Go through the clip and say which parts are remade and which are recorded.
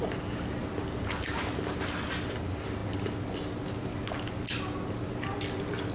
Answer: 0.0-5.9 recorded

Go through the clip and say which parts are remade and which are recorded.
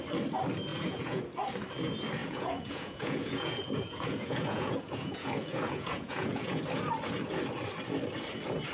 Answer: 0.0-0.7 recorded; 0.7-1.2 remade; 1.2-2.2 recorded; 2.2-6.6 remade; 6.6-8.7 recorded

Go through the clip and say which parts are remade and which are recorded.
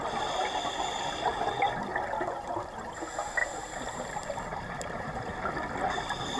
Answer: 0.0-3.4 recorded; 3.4-5.5 remade; 5.5-6.4 recorded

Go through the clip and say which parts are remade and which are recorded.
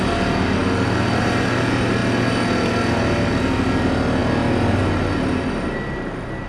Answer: 0.0-6.5 recorded